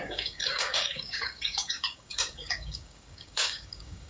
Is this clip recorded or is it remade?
remade